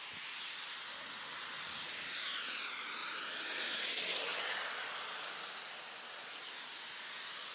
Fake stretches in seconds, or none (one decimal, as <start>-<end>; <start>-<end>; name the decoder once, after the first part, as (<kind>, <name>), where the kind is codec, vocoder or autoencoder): none